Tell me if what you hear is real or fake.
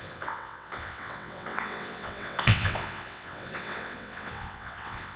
fake